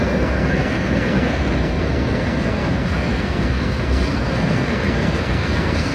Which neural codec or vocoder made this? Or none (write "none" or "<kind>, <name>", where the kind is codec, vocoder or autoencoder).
codec, SNAC